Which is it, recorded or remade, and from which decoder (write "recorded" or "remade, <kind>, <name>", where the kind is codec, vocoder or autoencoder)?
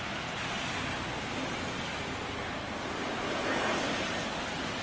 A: recorded